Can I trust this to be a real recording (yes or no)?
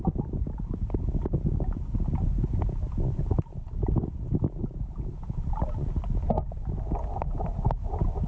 yes